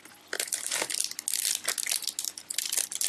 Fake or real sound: real